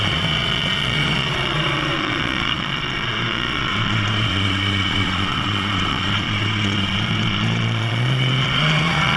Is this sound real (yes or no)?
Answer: no